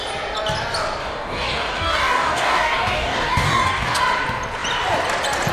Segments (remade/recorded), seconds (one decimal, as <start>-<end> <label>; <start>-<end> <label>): 0.0-1.0 recorded; 1.0-4.0 remade; 4.0-5.5 recorded

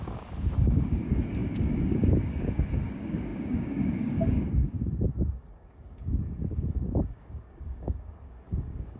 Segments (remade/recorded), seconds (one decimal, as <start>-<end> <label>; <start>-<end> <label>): 0.0-9.0 remade

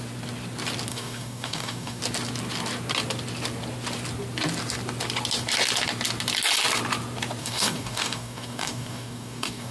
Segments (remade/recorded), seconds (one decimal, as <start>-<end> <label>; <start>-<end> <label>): 0.0-0.9 recorded; 0.9-2.0 remade; 2.0-7.4 recorded; 7.4-9.7 remade